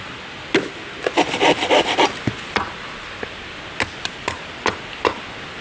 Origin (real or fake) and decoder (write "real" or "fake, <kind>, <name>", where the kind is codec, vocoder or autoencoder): real